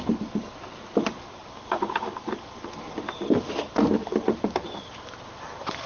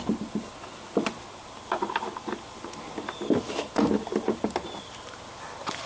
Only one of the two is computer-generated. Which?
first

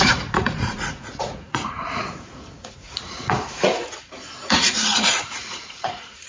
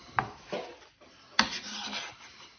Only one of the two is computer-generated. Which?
first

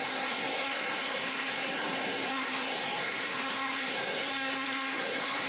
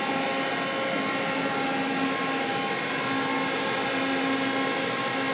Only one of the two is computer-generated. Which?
first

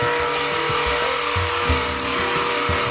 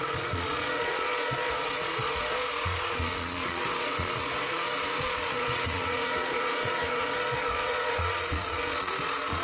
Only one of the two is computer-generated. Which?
second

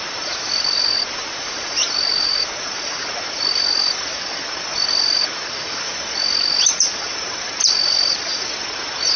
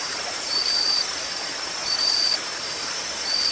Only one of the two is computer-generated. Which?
second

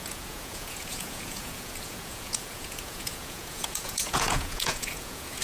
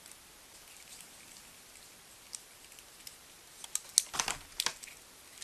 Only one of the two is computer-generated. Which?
first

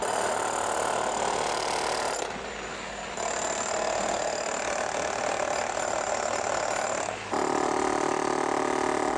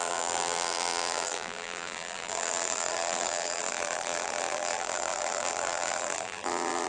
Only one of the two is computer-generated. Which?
second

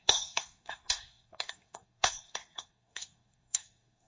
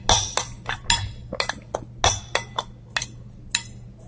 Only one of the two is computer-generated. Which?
first